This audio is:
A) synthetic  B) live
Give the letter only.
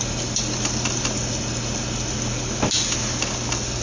B